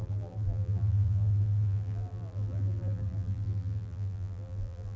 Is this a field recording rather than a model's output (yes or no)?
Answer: no